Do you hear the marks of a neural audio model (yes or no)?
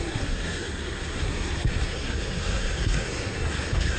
yes